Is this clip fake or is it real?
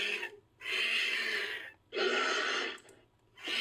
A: real